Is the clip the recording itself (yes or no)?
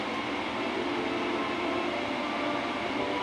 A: yes